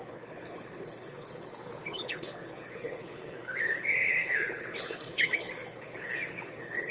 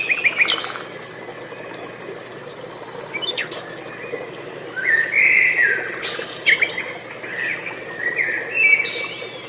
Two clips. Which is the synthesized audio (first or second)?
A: first